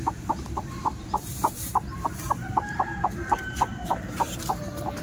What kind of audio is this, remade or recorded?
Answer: remade